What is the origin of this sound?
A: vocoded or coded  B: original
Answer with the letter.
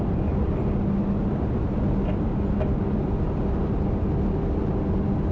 B